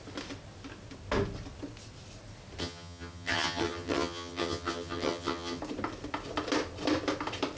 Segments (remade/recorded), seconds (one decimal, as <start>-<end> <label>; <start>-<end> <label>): 0.0-2.6 recorded; 2.6-5.6 remade; 5.6-7.6 recorded

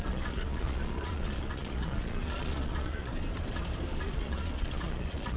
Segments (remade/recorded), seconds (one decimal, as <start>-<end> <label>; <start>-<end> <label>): 0.0-3.1 remade; 3.1-4.0 recorded; 4.0-5.4 remade

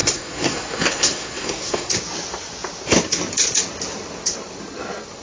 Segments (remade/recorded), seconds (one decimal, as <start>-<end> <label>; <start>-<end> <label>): 0.0-1.9 remade; 1.9-5.2 recorded

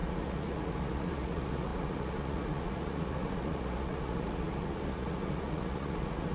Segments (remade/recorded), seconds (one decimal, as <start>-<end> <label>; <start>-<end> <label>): 0.0-6.3 remade

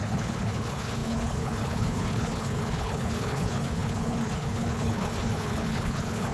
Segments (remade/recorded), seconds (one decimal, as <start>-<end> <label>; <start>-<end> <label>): 0.0-6.3 remade

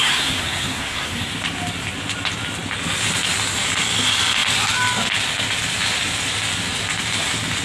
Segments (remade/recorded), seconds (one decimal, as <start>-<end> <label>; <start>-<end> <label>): 0.0-1.3 remade; 1.3-7.6 recorded

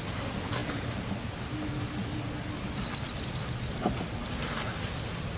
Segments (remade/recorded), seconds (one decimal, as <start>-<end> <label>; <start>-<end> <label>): 0.0-5.4 recorded

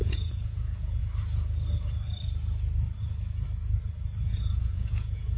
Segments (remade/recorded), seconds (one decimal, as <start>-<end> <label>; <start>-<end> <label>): 0.0-1.0 remade; 1.0-4.2 recorded; 4.2-5.4 remade